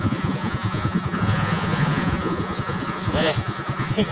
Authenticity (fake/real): fake